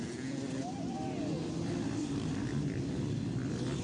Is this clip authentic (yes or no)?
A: no